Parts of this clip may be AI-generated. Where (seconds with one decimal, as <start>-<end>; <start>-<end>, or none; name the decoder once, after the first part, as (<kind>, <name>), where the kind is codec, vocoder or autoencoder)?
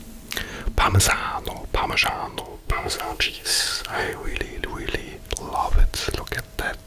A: 2.4-4.4 (codec, SNAC)